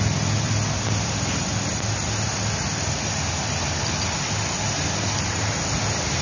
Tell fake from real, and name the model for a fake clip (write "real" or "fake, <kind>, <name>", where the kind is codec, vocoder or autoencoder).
real